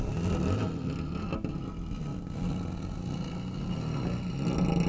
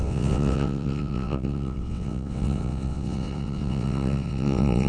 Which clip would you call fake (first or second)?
second